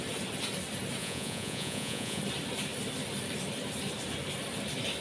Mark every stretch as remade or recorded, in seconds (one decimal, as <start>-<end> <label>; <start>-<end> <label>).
0.0-1.0 recorded; 1.0-2.2 remade; 2.2-5.0 recorded